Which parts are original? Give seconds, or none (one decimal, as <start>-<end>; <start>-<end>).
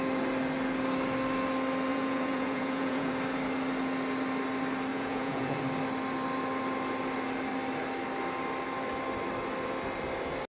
0.0-1.9; 3.1-4.9; 5.6-10.6